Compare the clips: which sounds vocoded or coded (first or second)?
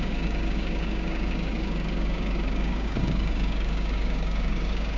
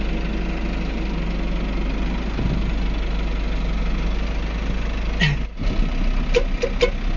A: first